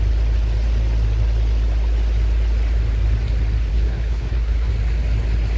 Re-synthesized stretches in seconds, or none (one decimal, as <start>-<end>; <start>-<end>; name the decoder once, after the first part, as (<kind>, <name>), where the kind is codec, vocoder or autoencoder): 3.7-4.7 (codec, SNAC)